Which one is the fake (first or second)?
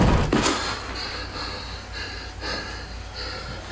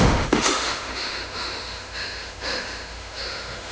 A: second